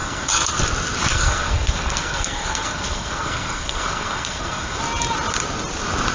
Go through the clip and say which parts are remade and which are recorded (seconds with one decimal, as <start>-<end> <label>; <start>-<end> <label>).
0.0-0.6 remade; 0.6-1.1 recorded; 1.1-4.8 remade; 4.8-6.1 recorded